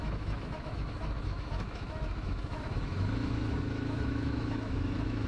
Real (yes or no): no